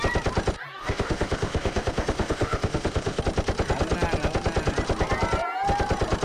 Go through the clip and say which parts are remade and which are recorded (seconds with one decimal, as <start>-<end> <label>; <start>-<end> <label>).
0.0-0.8 recorded; 0.8-3.2 remade; 3.2-6.2 recorded